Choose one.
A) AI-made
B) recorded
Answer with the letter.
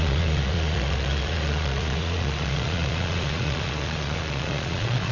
A